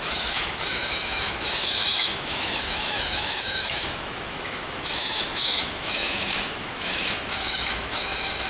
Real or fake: fake